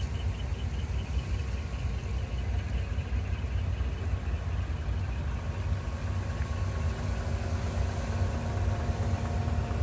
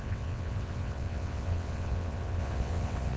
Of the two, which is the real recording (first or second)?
first